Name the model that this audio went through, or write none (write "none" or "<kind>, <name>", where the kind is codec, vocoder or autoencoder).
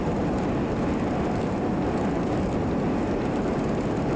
none